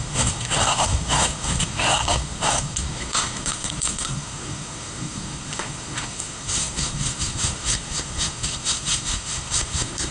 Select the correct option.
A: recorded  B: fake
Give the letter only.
B